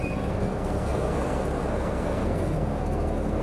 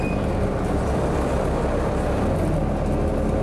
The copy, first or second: first